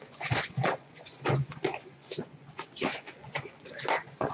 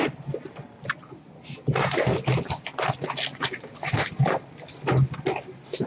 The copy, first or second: first